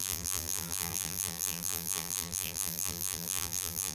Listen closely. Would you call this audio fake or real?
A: fake